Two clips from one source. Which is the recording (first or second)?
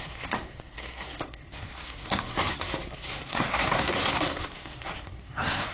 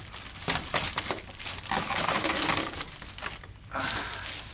second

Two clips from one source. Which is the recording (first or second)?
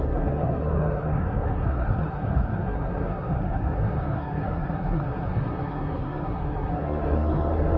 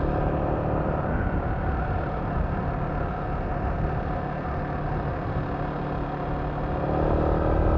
second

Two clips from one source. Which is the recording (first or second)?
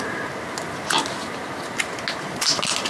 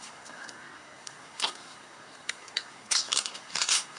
first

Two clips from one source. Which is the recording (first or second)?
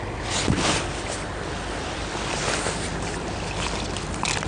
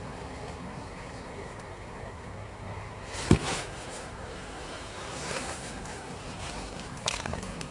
first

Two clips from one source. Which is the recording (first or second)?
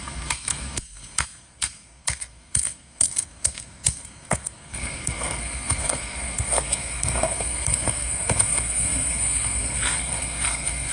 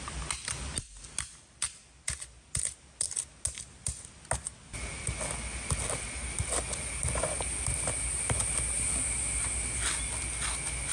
second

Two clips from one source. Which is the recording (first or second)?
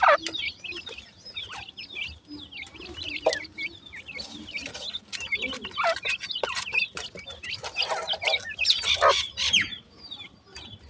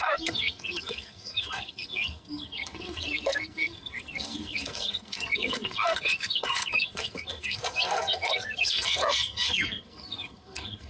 first